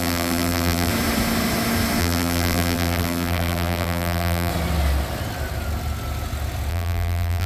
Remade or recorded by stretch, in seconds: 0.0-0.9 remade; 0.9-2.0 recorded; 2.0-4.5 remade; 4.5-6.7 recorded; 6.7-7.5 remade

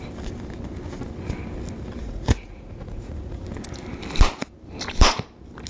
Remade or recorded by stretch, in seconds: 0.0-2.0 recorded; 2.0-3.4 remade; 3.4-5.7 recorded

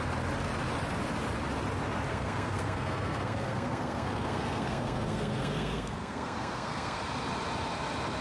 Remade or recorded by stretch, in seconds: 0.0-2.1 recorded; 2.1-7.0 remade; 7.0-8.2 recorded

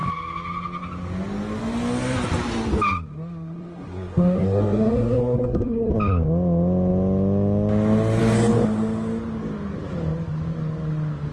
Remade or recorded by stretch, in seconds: 0.0-3.1 recorded; 3.1-5.9 remade; 5.9-11.3 recorded

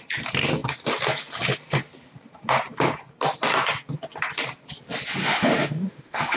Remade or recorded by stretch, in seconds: 0.0-5.2 recorded; 5.2-6.4 remade

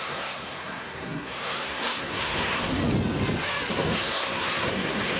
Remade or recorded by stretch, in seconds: 0.0-2.8 remade; 2.8-3.7 recorded; 3.7-5.2 remade